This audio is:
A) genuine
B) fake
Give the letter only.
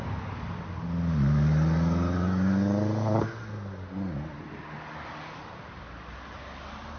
A